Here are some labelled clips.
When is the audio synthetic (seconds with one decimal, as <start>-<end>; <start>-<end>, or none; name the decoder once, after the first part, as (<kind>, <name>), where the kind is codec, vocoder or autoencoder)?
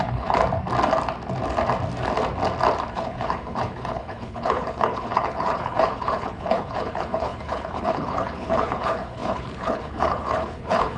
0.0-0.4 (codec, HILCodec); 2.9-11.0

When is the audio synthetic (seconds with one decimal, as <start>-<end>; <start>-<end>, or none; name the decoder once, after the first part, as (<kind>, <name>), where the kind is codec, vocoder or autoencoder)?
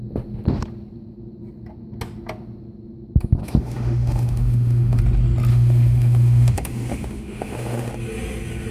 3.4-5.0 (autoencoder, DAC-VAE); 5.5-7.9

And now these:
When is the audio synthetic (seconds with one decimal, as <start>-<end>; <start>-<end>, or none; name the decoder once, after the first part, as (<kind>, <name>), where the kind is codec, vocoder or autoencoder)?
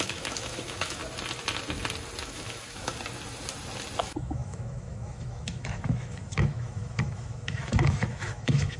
0.0-1.0 (autoencoder, DAC-VAE); 2.2-2.9; 4.0-8.8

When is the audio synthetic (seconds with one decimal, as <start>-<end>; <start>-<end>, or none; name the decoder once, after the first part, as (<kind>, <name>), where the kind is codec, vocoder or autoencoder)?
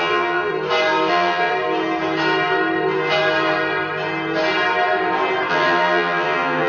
0.0-0.5 (vocoder, BigVGAN v2); 1.1-1.5; 5.5-6.7